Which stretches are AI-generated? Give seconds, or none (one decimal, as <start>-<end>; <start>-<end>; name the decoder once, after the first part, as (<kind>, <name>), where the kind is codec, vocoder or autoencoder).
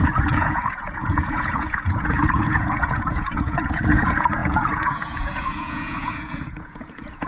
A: 0.0-7.3 (vocoder, Vocos)